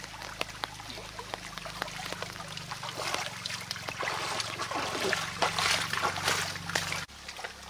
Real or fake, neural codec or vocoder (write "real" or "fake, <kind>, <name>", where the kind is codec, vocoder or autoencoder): real